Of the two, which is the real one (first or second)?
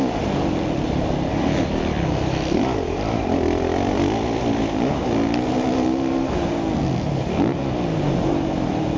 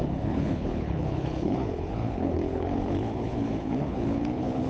first